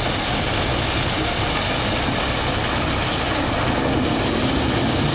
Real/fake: real